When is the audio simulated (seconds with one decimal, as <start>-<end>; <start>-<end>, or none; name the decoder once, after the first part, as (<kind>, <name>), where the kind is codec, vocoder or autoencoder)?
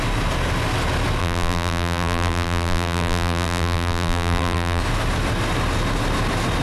1.2-4.8 (vocoder, BigVGAN v2)